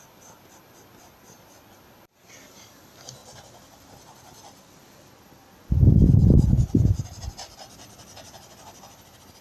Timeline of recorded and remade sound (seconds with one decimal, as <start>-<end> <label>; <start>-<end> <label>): 0.0-3.2 recorded; 3.2-5.8 remade; 5.8-9.4 recorded